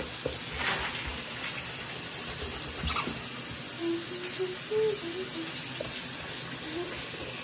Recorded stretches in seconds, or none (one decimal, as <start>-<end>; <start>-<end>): 0.0-7.4